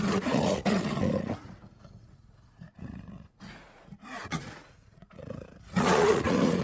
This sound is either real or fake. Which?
fake